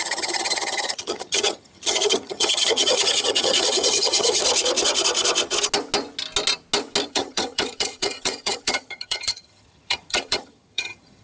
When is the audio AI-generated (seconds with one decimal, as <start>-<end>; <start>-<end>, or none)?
0.0-4.4; 7.1-11.2